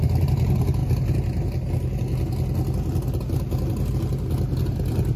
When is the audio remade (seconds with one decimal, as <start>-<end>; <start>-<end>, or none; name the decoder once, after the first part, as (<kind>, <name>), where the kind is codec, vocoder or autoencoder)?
none